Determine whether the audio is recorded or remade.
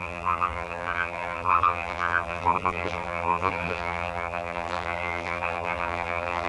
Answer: remade